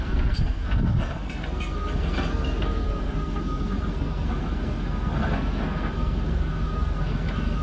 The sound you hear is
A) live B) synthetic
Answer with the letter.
B